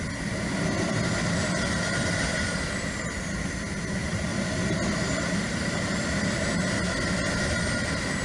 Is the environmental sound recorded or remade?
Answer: recorded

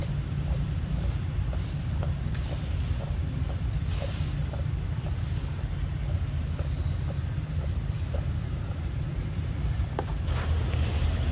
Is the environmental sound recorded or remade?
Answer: recorded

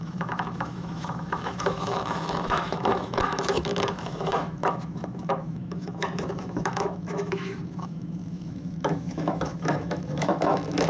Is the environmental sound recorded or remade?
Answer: remade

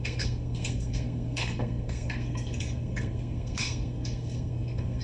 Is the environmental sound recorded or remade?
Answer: remade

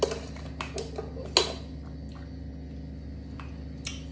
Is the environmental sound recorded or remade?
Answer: recorded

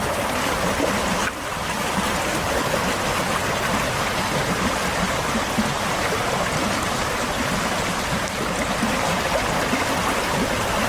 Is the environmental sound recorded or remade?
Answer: recorded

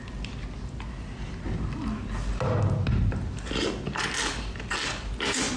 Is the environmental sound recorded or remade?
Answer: recorded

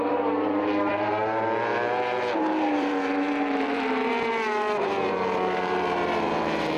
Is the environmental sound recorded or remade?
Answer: remade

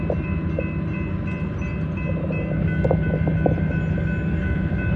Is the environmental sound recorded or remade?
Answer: recorded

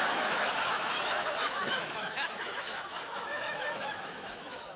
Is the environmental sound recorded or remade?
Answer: remade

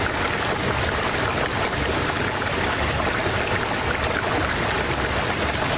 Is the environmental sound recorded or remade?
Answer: recorded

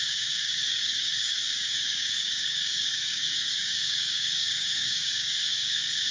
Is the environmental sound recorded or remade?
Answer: remade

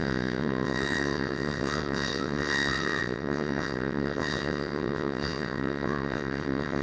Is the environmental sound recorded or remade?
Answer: remade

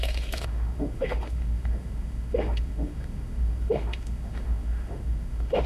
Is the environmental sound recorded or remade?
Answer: remade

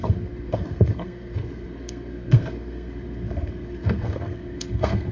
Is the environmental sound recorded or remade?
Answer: remade